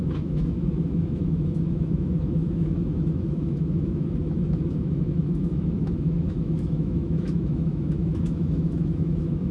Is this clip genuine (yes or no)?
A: no